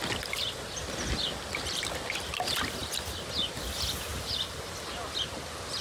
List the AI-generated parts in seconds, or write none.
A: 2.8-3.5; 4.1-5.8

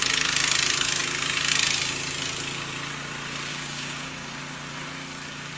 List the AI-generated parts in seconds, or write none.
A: 3.5-4.4

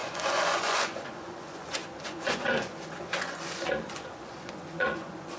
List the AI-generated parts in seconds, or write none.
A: 0.0-5.4

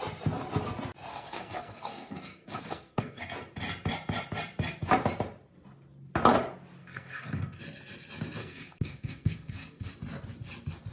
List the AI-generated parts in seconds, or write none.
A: 1.1-3.2; 6.8-7.6; 8.4-9.9

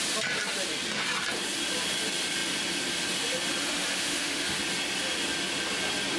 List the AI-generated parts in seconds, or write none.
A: 3.6-4.6

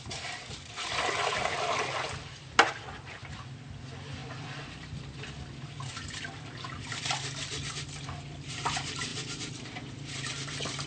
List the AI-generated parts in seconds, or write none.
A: 4.2-5.4; 9.1-10.3

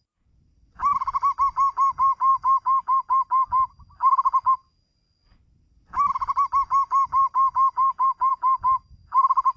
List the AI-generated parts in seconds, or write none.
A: none